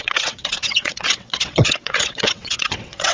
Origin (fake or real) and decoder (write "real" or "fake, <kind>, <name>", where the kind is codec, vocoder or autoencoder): fake, vocoder, WaveNeXt